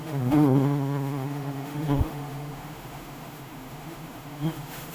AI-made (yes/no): yes